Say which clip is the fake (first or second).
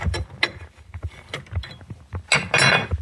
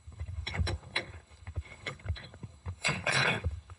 second